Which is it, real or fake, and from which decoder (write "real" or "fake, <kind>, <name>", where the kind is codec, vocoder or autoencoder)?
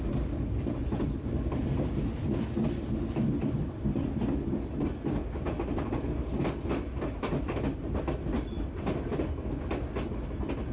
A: real